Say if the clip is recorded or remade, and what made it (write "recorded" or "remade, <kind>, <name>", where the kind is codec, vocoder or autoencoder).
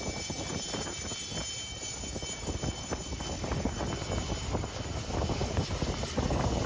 recorded